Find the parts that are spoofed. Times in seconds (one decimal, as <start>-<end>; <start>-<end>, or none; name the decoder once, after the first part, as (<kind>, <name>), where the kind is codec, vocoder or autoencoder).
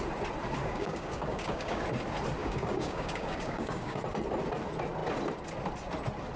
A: 0.6-1.8 (codec, DAC); 2.4-4.0